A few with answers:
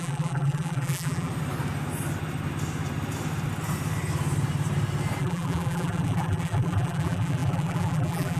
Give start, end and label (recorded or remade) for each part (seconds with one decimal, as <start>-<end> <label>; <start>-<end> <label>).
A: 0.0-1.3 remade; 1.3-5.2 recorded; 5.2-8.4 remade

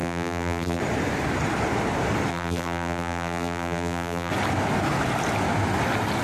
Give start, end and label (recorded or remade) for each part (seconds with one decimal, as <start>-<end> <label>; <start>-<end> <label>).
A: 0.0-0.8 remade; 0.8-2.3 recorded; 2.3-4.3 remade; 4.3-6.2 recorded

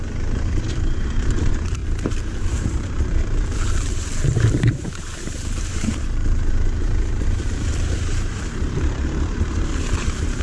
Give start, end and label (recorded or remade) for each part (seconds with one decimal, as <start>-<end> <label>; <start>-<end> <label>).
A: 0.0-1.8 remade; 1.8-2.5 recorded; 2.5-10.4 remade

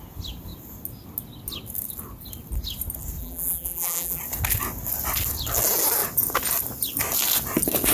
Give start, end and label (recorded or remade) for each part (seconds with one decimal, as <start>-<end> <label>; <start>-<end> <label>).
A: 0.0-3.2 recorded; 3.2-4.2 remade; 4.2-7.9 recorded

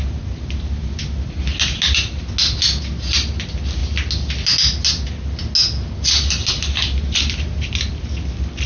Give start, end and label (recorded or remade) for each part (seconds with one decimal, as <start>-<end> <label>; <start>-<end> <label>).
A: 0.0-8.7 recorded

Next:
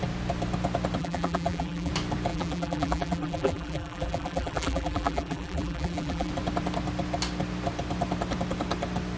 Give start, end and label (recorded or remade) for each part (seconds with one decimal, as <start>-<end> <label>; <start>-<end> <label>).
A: 0.0-1.0 recorded; 1.0-1.9 remade; 1.9-2.3 recorded; 2.3-6.3 remade; 6.3-9.2 recorded